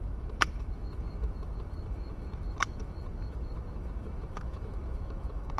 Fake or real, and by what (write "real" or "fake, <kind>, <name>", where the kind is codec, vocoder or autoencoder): fake, autoencoder, DAC-VAE